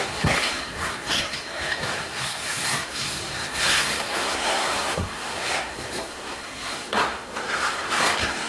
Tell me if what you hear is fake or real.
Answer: fake